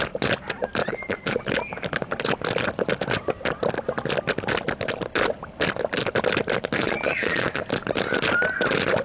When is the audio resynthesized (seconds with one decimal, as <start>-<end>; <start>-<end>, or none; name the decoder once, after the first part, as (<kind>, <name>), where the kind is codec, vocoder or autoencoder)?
0.8-1.5 (vocoder, Vocos); 6.8-7.6